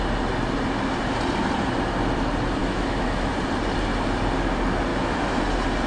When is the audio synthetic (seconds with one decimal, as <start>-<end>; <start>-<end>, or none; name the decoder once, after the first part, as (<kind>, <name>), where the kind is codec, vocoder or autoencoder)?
2.6-3.3 (autoencoder, DAC-VAE); 4.9-5.4